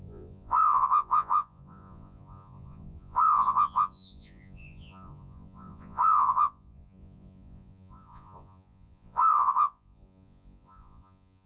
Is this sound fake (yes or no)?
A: yes